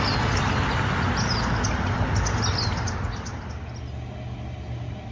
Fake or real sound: real